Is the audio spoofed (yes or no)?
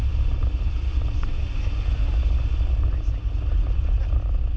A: no